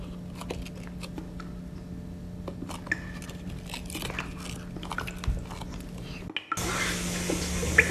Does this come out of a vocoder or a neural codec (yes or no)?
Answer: no